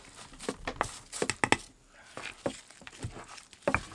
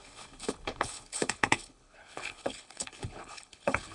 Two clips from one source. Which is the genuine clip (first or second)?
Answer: first